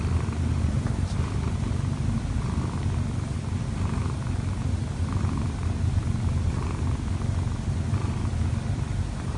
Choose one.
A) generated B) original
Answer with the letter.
B